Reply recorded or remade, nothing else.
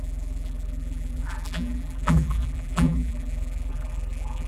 remade